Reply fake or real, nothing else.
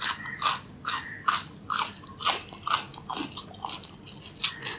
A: real